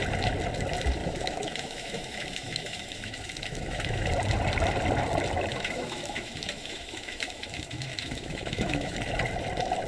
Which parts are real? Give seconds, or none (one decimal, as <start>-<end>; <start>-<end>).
0.0-1.0; 4.1-5.5; 9.0-9.9